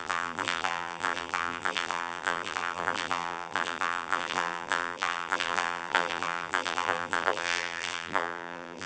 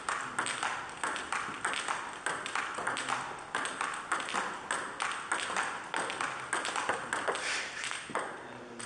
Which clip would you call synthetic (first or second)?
first